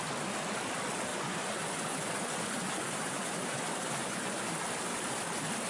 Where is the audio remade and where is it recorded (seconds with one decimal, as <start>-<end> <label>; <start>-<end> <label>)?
0.0-1.1 recorded; 1.1-4.5 remade; 4.5-5.7 recorded